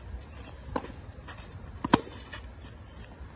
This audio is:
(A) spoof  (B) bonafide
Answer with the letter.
B